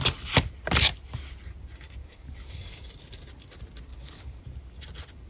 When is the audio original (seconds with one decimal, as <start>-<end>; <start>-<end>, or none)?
0.0-2.0; 2.9-3.9; 4.4-5.3